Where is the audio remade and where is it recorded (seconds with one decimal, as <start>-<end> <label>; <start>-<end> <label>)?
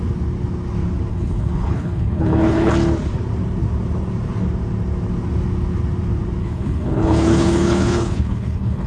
0.0-1.1 recorded; 1.1-2.7 remade; 2.7-6.4 recorded; 6.4-8.9 remade